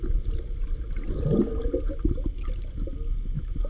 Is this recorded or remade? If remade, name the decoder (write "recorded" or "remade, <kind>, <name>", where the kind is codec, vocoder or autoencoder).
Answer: recorded